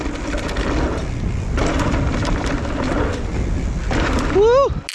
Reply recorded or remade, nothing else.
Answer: recorded